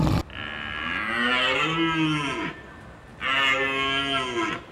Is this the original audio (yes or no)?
yes